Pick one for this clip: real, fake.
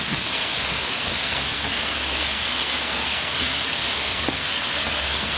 fake